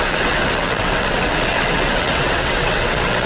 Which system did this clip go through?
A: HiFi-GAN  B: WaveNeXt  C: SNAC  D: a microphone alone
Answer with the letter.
B